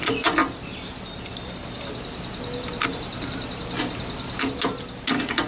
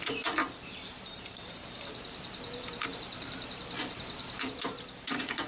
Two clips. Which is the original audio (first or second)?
first